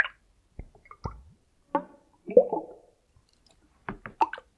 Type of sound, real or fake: real